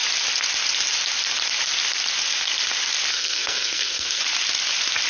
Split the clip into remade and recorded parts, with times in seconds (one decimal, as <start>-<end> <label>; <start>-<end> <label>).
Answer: 0.0-3.1 recorded; 3.1-4.2 remade; 4.2-5.1 recorded